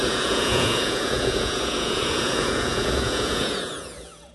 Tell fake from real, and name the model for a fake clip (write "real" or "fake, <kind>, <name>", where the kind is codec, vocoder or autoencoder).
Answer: fake, vocoder, Vocos